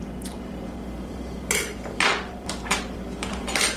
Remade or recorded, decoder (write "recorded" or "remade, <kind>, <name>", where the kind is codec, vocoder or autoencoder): remade, vocoder, BigVGAN v2